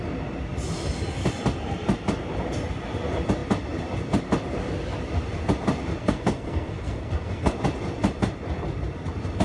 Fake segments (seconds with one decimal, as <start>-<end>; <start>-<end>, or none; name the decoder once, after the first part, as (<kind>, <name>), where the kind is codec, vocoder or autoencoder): 6.0-7.5 (codec, SNAC)